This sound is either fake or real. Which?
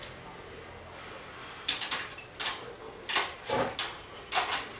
real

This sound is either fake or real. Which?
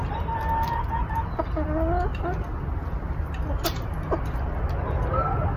real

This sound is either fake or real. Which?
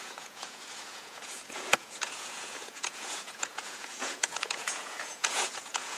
fake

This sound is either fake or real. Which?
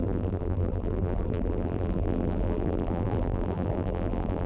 fake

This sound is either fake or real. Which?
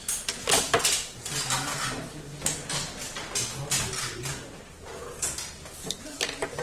real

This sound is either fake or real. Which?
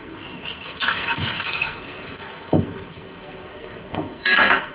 fake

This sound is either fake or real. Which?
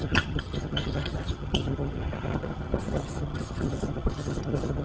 fake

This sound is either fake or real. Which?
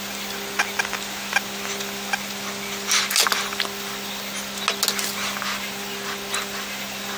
real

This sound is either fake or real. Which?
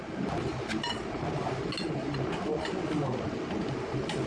real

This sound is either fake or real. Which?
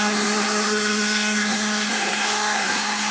fake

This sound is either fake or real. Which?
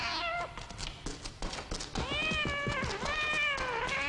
real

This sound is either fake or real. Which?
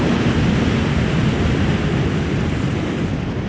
real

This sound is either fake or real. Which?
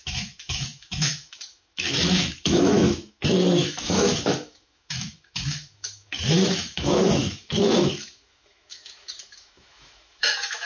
fake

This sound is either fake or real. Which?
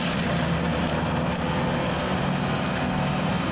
real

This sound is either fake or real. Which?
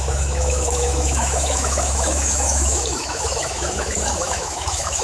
fake